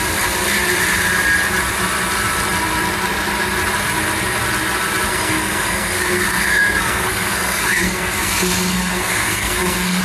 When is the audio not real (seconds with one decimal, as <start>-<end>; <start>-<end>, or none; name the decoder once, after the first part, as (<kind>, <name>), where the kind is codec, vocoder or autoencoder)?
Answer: 5.1-10.0 (codec, SNAC)